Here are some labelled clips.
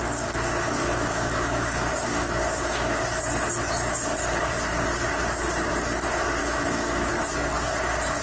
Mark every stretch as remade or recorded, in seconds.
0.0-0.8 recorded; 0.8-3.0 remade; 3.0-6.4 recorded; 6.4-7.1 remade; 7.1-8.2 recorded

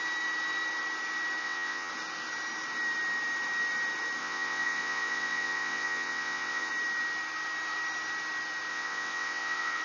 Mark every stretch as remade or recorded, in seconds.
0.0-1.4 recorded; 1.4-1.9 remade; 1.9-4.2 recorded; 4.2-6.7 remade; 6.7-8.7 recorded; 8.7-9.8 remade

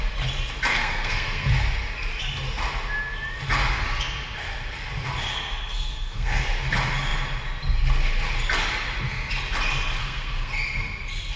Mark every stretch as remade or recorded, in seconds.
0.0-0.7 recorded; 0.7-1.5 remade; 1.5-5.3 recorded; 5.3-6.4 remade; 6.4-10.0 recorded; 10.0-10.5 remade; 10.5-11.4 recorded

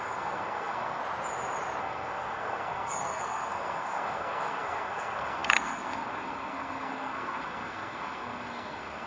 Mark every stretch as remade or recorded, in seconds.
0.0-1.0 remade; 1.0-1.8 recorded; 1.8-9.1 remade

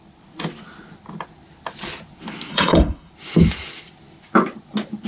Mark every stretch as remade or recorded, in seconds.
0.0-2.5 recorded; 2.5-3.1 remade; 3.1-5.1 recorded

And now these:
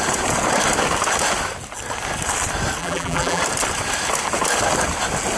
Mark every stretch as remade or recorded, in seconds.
0.0-2.8 recorded; 2.8-3.4 remade; 3.4-5.4 recorded

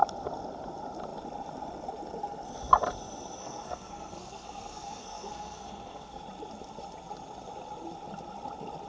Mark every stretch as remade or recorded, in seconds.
0.0-3.4 recorded; 3.4-6.2 remade; 6.2-8.9 recorded